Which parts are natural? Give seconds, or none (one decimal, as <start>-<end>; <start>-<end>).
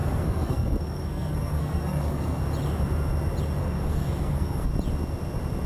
2.4-3.6; 4.7-5.7